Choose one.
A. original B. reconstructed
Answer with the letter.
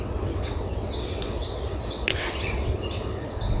B